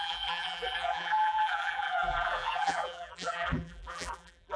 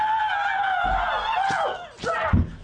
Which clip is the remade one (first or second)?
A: first